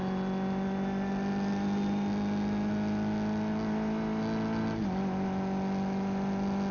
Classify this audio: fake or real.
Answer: real